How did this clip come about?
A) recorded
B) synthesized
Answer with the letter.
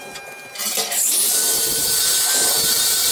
A